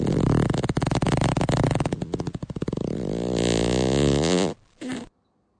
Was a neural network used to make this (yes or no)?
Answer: no